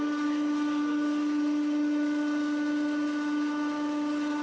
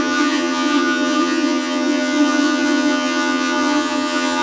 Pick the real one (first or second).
first